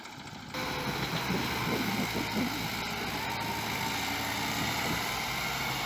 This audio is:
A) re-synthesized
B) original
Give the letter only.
B